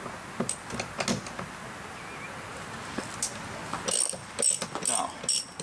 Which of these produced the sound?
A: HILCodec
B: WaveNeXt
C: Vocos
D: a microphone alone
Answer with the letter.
D